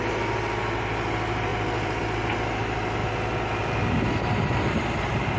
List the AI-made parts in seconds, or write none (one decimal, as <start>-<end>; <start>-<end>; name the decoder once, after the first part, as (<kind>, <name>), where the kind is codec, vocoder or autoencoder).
1.5-2.0 (vocoder, BigVGAN v2)